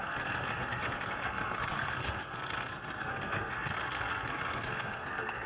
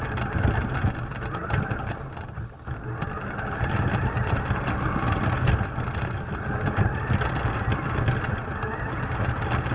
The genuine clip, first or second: second